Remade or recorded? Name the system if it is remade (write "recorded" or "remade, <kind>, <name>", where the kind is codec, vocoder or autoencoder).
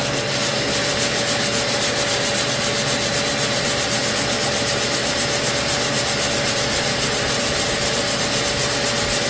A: recorded